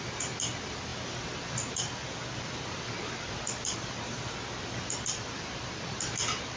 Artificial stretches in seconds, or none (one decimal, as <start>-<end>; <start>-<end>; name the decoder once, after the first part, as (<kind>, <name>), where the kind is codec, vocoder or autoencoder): none